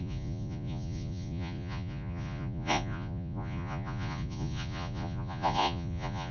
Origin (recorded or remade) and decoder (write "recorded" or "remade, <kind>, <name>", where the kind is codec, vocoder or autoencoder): remade, vocoder, Vocos